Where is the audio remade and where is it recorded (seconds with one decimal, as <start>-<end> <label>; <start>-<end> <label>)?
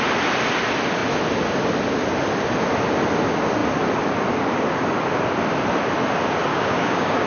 0.0-6.5 recorded; 6.5-7.3 remade